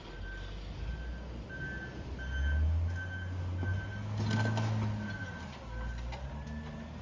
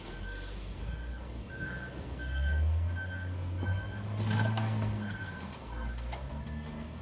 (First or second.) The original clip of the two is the first